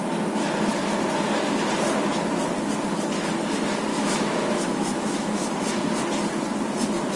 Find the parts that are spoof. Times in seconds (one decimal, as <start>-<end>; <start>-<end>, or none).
3.9-5.5